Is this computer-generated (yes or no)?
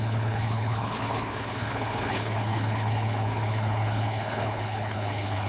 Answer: yes